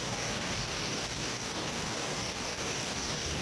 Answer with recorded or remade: remade